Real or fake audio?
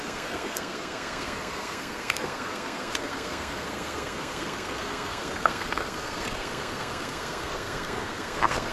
fake